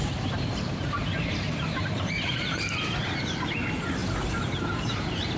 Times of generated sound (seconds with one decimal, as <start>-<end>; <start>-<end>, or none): 0.0-3.2; 4.0-5.4